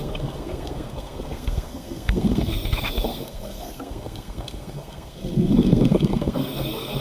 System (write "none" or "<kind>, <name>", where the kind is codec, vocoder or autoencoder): codec, SNAC